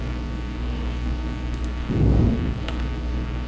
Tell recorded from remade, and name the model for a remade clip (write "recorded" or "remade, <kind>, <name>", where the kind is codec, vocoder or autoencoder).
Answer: remade, codec, DAC